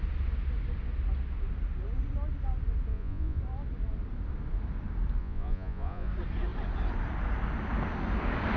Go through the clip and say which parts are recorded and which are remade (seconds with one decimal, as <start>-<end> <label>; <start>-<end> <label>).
0.0-2.9 recorded; 2.9-3.4 remade; 3.4-5.2 recorded; 5.2-6.1 remade; 6.1-8.6 recorded

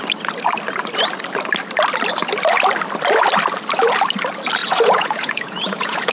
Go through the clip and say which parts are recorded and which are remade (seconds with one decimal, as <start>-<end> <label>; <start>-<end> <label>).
0.0-4.6 recorded; 4.6-6.1 remade

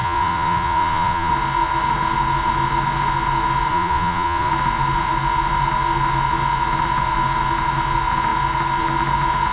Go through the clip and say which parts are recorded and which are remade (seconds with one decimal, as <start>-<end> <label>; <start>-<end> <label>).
0.0-1.3 remade; 1.3-3.7 recorded; 3.7-4.5 remade; 4.5-9.5 recorded

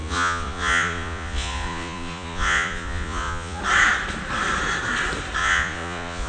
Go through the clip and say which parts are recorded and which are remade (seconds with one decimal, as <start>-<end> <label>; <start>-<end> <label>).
0.0-3.6 remade; 3.6-5.4 recorded; 5.4-6.3 remade

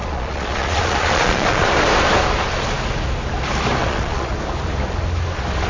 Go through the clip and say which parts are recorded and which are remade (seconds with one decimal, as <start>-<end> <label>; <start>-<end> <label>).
0.0-1.7 remade; 1.7-3.8 recorded; 3.8-4.3 remade; 4.3-5.7 recorded

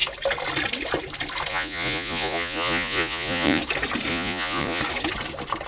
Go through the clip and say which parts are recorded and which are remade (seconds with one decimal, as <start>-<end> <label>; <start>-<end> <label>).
0.0-1.5 recorded; 1.5-3.6 remade; 3.6-4.1 recorded; 4.1-4.8 remade; 4.8-5.7 recorded

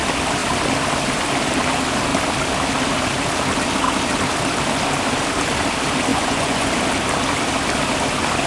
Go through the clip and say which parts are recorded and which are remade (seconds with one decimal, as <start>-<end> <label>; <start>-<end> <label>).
0.0-6.1 recorded; 6.1-6.7 remade; 6.7-8.5 recorded